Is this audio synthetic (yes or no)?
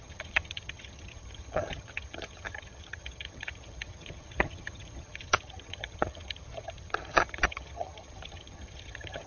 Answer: yes